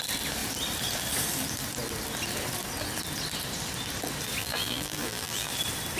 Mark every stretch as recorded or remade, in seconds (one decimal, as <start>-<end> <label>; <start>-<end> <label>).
0.0-4.4 recorded; 4.4-5.5 remade; 5.5-6.0 recorded